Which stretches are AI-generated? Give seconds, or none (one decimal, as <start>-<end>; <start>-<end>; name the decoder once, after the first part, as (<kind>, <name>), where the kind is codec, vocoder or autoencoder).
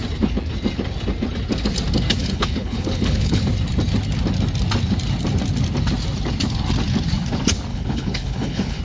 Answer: 2.2-3.4 (codec, HILCodec); 7.7-8.8